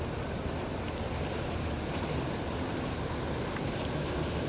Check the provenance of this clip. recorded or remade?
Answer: recorded